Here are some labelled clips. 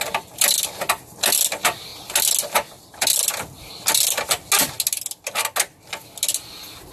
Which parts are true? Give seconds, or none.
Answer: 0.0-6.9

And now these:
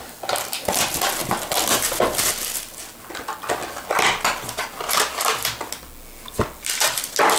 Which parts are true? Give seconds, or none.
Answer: 0.0-7.4

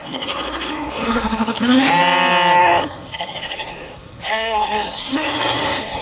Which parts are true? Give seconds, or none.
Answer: 1.9-2.6